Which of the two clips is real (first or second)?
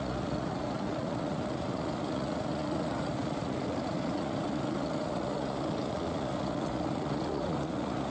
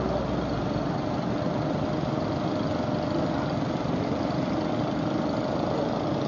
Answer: second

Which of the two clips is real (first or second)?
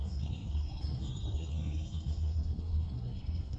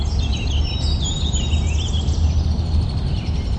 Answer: second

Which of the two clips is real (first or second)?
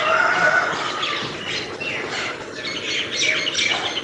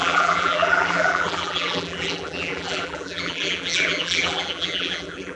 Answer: first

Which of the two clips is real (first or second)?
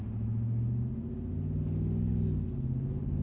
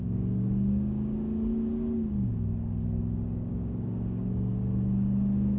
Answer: first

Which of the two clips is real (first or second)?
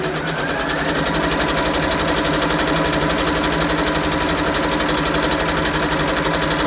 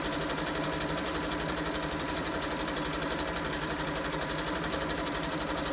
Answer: first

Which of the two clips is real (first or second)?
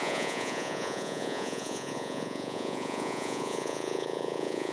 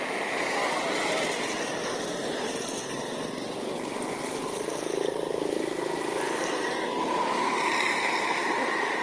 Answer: second